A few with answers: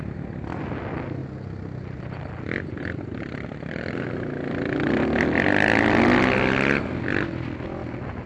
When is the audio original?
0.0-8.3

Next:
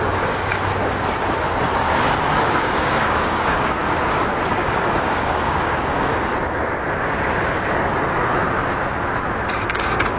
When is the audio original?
0.5-2.4; 3.8-4.5; 6.3-9.7

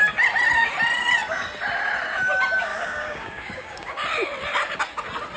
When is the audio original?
0.0-2.7; 3.9-5.4

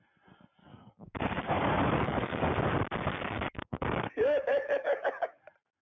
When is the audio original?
0.0-0.6; 2.5-3.1; 5.4-6.0

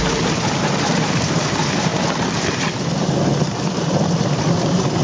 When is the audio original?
0.0-5.0

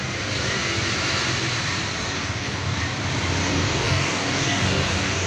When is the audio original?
0.0-2.0; 2.8-3.4